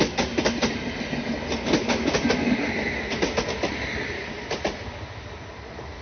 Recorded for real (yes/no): yes